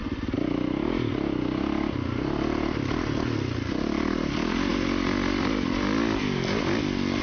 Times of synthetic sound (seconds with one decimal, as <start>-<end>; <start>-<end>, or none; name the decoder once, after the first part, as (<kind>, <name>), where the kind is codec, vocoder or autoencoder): none